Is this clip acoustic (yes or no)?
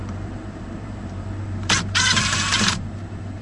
no